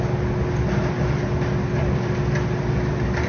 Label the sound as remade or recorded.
recorded